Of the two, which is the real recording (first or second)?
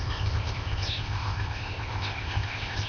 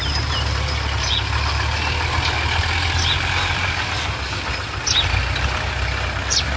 second